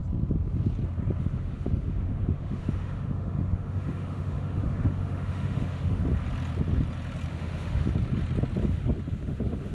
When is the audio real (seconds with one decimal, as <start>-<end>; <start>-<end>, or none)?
0.0-1.2; 6.0-7.3; 7.9-8.6